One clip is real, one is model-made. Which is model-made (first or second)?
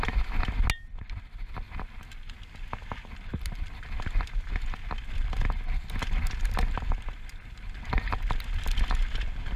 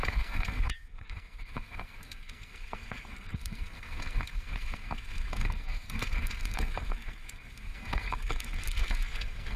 second